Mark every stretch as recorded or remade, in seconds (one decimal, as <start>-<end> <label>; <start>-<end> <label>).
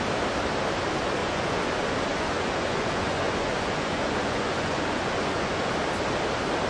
0.0-1.2 recorded; 1.2-1.7 remade; 1.7-2.1 recorded; 2.1-5.7 remade; 5.7-6.7 recorded